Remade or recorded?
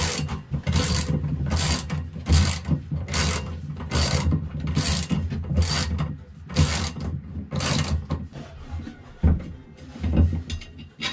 recorded